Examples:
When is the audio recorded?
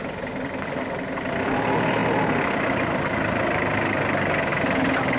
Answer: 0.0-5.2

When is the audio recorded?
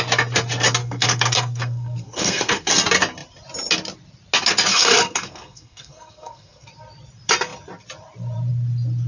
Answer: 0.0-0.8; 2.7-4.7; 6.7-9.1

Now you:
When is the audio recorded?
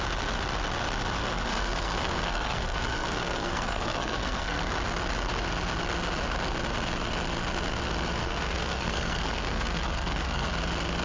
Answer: 0.0-1.5; 4.6-8.2; 10.5-11.0